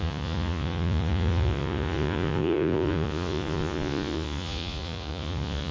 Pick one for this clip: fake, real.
fake